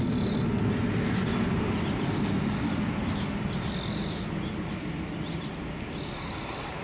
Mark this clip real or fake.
real